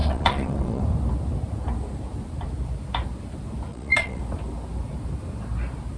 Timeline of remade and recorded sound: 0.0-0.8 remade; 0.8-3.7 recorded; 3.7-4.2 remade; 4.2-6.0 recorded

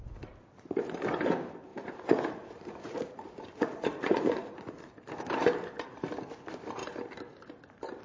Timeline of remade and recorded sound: 0.0-1.7 recorded; 1.7-4.9 remade; 4.9-8.0 recorded

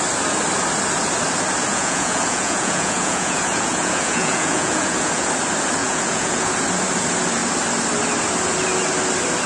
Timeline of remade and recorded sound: 0.0-1.7 recorded; 1.7-5.3 remade; 5.3-5.8 recorded; 5.8-6.5 remade; 6.5-9.5 recorded

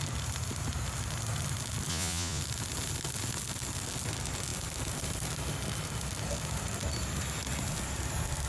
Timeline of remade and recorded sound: 0.0-1.9 recorded; 1.9-2.4 remade; 2.4-8.5 recorded